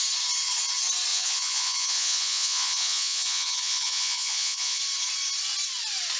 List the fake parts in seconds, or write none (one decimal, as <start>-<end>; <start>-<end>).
1.1-4.8